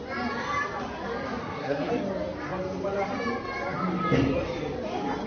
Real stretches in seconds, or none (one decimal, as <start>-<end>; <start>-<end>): 0.0-1.4; 1.9-5.3